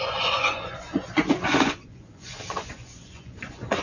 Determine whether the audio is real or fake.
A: fake